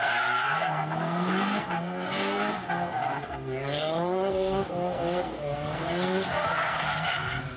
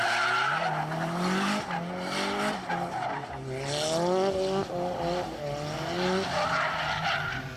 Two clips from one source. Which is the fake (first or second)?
first